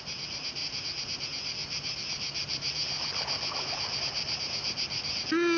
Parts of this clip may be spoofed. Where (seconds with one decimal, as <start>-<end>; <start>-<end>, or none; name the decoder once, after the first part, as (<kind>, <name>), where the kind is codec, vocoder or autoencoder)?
none